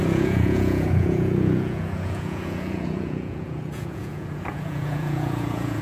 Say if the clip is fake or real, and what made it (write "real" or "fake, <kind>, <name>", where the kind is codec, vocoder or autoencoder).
fake, vocoder, Vocos